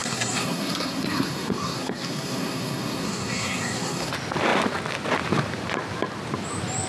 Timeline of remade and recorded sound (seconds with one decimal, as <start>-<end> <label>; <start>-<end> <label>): 0.0-4.1 remade; 4.1-6.9 recorded

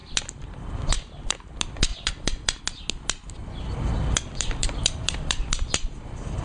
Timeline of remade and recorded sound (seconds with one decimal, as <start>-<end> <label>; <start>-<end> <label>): 0.0-1.3 remade; 1.3-1.9 recorded; 1.9-2.6 remade; 2.6-3.4 recorded; 3.4-6.4 remade

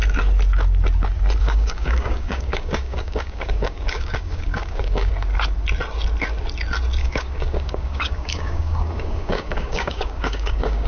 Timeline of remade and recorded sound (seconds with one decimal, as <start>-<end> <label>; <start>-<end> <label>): 0.0-1.4 recorded; 1.4-5.1 remade; 5.1-7.0 recorded; 7.0-10.9 remade

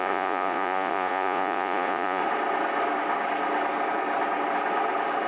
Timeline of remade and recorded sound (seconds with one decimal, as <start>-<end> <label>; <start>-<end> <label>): 0.0-2.2 remade; 2.2-5.3 recorded

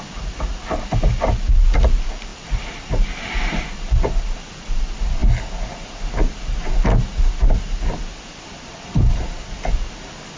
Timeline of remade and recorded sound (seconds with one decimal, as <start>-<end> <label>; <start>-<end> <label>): 0.0-10.4 recorded

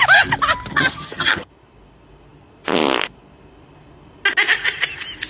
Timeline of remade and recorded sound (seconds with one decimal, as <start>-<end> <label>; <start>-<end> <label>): 0.0-0.7 recorded; 0.7-1.5 remade; 1.5-5.3 recorded

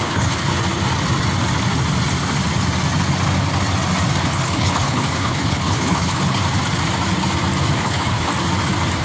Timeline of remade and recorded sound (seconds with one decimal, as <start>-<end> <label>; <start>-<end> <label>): 0.0-0.5 remade; 0.5-4.2 recorded; 4.2-6.4 remade; 6.4-7.8 recorded; 7.8-8.3 remade; 8.3-9.0 recorded